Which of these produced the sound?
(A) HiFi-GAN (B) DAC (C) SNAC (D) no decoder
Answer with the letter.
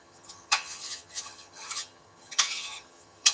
A